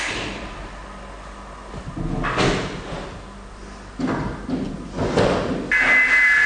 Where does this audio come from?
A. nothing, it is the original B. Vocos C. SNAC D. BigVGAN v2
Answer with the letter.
A